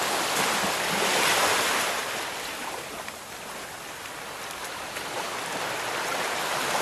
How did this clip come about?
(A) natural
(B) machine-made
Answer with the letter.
A